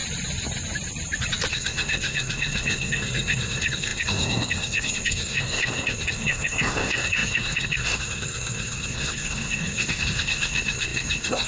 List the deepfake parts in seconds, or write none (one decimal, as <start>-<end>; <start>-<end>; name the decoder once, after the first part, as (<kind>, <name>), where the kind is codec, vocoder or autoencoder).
1.5-11.5 (codec, SNAC)